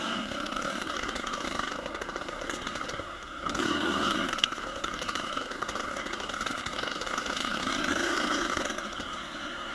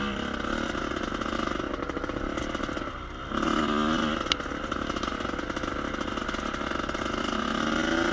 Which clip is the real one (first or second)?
second